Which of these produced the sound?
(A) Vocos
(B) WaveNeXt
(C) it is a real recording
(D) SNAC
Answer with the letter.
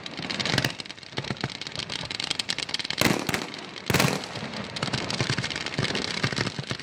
C